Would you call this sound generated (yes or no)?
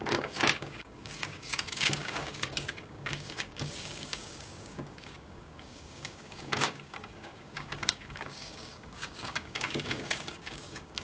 yes